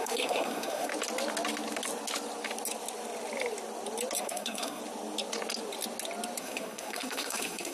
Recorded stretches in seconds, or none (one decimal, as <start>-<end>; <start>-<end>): 0.9-4.2; 4.8-6.4